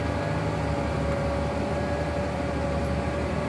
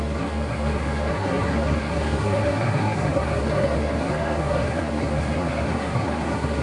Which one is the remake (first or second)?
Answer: second